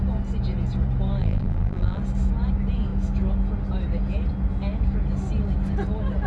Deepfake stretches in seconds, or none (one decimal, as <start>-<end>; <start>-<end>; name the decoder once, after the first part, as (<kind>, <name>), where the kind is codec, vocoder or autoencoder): 1.2-2.0 (vocoder, BigVGAN v2)